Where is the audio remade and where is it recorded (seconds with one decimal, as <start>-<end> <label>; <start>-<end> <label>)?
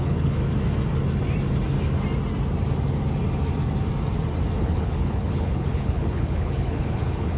0.0-0.4 remade; 0.4-4.6 recorded; 4.6-7.4 remade